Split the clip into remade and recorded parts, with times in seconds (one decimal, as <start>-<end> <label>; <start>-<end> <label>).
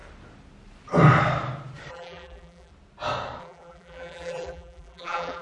0.0-1.9 recorded; 1.9-2.7 remade; 2.7-3.4 recorded; 3.4-5.4 remade